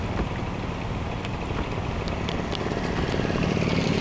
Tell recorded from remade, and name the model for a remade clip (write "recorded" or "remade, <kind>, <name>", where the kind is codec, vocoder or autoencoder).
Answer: recorded